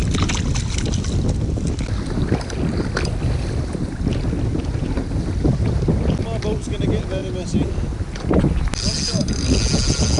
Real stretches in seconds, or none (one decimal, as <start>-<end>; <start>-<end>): 0.0-10.2